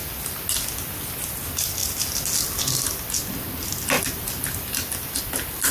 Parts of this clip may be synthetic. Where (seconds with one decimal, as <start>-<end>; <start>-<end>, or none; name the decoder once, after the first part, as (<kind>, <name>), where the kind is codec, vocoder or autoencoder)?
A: none